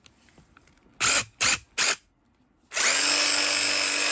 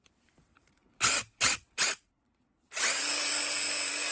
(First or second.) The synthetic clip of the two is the second